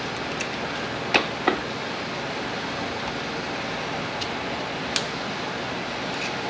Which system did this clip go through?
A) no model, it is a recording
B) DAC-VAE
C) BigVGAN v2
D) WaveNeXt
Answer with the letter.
A